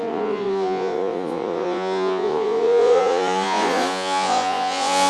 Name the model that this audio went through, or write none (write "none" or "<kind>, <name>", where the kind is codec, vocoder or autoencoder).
vocoder, Vocos